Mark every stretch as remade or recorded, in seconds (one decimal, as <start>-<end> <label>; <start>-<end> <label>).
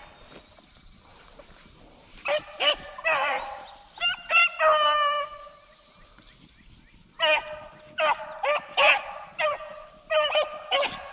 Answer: 0.0-1.1 recorded; 1.1-3.8 remade; 3.8-9.7 recorded; 9.7-10.6 remade; 10.6-11.1 recorded